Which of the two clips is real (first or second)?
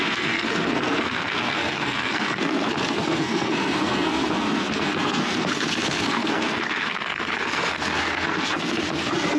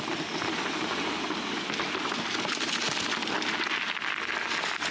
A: second